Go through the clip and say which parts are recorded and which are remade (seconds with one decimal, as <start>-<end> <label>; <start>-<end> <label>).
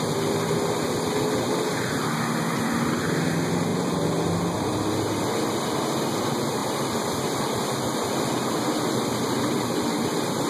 0.0-10.5 recorded